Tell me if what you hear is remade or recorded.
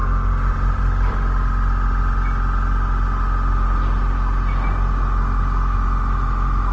recorded